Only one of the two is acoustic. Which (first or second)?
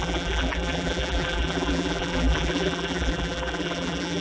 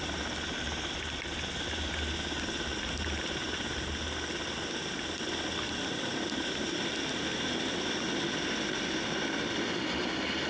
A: second